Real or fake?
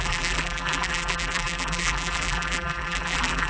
fake